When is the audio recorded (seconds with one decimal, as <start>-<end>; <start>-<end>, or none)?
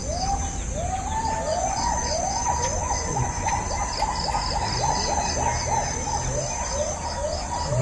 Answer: 0.0-1.5; 3.5-7.8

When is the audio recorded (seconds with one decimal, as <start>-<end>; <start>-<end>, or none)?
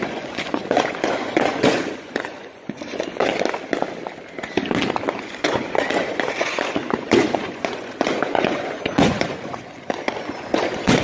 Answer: 3.3-5.2